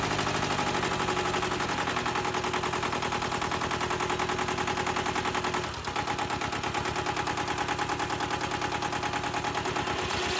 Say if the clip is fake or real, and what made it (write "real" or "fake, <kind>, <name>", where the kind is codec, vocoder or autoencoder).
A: real